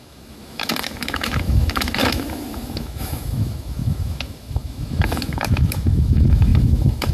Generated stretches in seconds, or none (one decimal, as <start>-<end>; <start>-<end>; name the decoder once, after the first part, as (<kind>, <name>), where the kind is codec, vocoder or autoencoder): 0.0-7.1 (autoencoder, DAC-VAE)